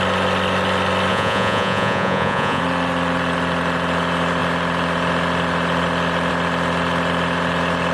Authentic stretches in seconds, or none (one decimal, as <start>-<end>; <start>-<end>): 0.0-1.1; 2.6-7.9